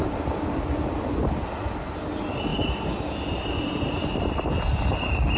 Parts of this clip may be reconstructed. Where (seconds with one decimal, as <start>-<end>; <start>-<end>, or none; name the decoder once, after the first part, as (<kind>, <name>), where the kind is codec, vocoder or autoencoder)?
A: none